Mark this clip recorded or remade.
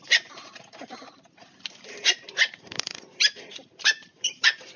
remade